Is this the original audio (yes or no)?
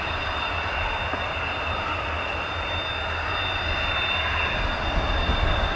yes